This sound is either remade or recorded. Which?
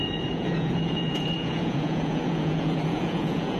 remade